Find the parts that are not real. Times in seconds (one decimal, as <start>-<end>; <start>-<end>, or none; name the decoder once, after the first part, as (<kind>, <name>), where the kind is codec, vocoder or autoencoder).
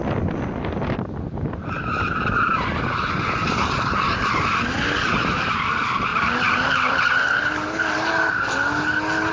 none